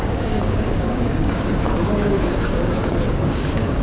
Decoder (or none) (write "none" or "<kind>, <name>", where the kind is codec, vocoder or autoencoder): codec, DAC